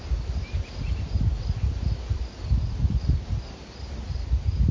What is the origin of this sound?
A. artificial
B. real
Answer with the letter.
B